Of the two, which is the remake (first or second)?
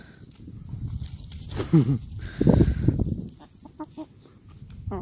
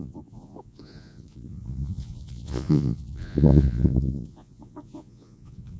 second